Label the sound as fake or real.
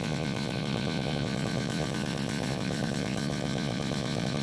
fake